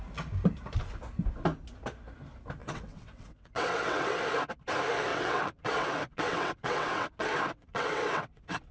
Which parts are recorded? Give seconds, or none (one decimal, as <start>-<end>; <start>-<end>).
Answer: 0.0-2.6; 4.2-5.1